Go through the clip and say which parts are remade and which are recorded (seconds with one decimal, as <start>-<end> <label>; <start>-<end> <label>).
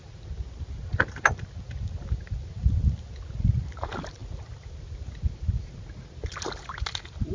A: 0.0-7.3 recorded